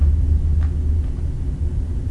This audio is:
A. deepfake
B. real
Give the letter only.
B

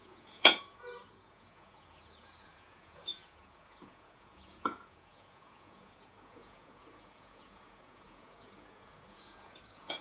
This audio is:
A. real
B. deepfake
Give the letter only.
B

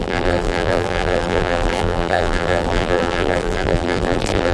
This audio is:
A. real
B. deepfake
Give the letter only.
B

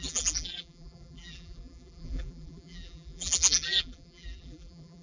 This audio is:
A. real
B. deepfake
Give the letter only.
B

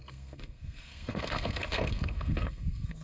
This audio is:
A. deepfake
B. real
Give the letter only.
A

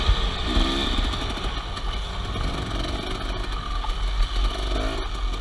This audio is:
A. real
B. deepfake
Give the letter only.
A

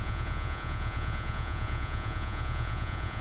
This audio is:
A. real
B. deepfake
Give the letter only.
B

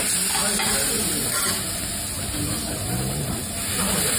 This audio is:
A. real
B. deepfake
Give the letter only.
A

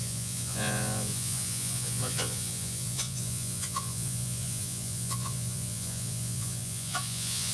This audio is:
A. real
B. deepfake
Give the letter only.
B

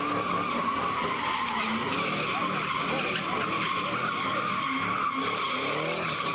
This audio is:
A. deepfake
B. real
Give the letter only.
B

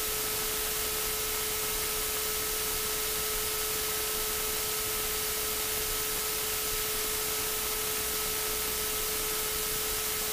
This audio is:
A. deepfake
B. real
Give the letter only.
B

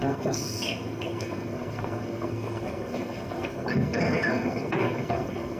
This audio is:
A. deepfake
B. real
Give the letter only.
A